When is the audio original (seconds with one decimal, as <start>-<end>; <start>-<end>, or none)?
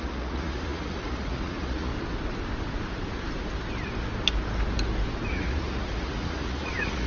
1.9-5.3